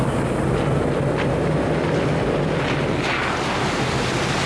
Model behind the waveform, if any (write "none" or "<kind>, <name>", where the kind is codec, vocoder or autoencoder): none